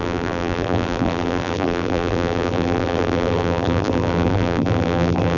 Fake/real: fake